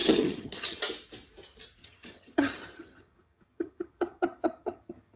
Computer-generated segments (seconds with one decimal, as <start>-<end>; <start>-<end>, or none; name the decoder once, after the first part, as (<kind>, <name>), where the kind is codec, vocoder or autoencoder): 0.0-0.8 (vocoder, HiFi-GAN); 1.8-5.2